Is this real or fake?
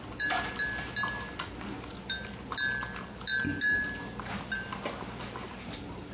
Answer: real